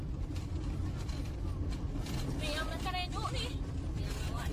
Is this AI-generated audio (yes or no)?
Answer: no